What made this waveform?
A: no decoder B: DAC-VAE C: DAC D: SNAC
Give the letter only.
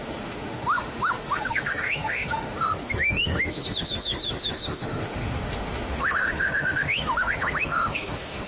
B